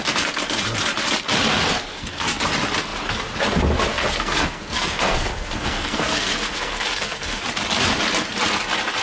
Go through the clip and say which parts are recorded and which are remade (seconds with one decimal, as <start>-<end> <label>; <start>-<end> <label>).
0.0-1.9 recorded; 1.9-2.4 remade; 2.4-3.9 recorded; 3.9-7.4 remade; 7.4-9.0 recorded